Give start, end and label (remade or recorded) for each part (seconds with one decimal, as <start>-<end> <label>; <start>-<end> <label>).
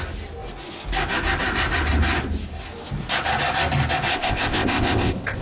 0.0-4.1 recorded; 4.1-5.4 remade